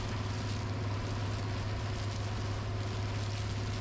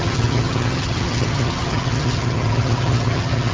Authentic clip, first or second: first